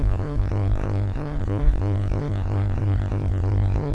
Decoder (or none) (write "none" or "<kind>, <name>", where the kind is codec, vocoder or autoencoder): codec, SNAC